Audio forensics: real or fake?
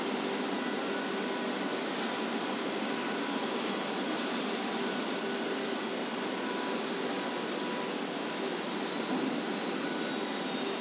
real